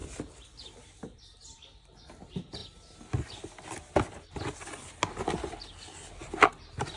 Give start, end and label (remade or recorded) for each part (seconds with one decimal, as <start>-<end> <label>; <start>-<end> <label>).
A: 0.0-2.0 remade; 2.0-7.0 recorded